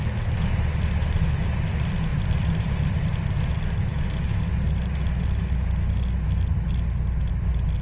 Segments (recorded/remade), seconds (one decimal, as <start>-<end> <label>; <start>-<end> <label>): 0.0-3.9 recorded; 3.9-4.4 remade; 4.4-7.8 recorded